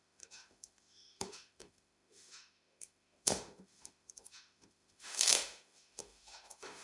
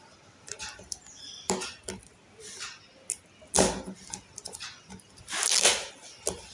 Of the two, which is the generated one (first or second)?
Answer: first